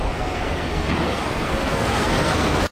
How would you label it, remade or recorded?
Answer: remade